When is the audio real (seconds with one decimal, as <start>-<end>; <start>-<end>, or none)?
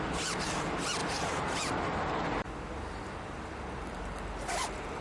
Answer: 0.0-5.0